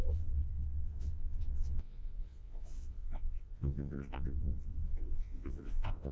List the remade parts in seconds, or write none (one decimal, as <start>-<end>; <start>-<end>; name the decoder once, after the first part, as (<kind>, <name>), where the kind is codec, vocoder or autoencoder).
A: 0.0-6.1 (vocoder, WaveNeXt)